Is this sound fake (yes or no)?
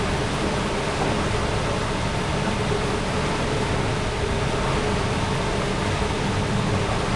no